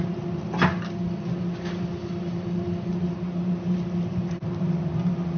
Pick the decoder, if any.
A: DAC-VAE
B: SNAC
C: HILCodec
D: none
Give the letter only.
D